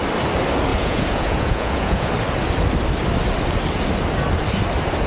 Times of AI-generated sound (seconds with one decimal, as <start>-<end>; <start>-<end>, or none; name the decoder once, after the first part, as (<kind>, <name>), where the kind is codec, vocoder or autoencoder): 0.7-2.1 (vocoder, Vocos)

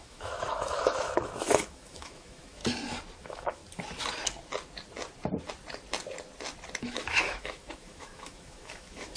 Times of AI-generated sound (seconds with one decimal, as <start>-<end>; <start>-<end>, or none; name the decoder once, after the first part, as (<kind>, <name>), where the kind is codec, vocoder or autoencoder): 0.0-2.6 (autoencoder, DAC-VAE); 3.2-3.6; 6.8-9.2

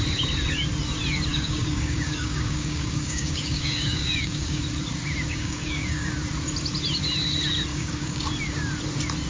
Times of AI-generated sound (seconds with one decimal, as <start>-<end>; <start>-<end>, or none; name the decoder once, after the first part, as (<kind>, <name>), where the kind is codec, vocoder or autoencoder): 1.3-4.6 (codec, DAC); 5.3-6.1; 7.7-8.2

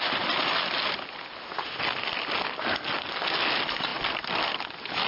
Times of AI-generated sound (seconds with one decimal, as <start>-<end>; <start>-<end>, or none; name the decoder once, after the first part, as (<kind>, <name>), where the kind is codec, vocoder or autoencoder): none

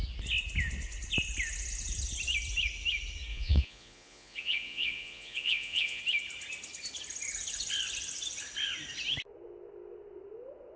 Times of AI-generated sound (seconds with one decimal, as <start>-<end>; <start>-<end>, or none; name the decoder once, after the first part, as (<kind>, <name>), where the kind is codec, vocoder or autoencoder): 3.3-6.0 (vocoder, Vocos)